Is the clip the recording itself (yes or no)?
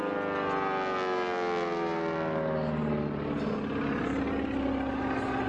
yes